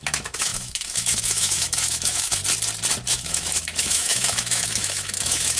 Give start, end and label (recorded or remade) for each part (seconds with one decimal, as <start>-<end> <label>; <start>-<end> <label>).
0.0-2.4 remade; 2.4-3.1 recorded; 3.1-5.6 remade